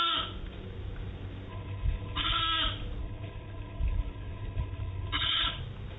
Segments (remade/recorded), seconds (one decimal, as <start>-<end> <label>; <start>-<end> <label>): 0.0-1.5 recorded; 1.5-2.4 remade; 2.4-3.0 recorded; 3.0-5.6 remade; 5.6-6.0 recorded